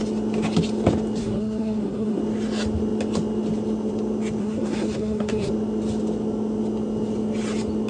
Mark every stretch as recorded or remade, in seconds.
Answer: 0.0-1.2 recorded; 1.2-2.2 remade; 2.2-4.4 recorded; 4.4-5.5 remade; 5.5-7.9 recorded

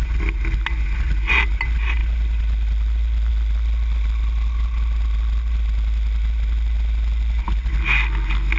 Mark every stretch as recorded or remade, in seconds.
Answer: 0.0-8.6 recorded

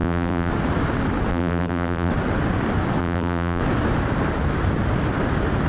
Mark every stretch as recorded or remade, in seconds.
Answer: 0.0-0.5 remade; 0.5-1.3 recorded; 1.3-2.1 remade; 2.1-3.0 recorded; 3.0-3.6 remade; 3.6-5.7 recorded